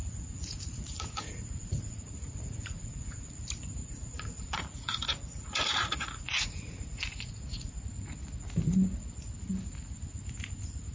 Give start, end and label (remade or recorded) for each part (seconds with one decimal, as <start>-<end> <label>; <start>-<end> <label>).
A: 0.0-3.3 remade; 3.3-3.8 recorded; 3.8-7.8 remade; 7.8-10.9 recorded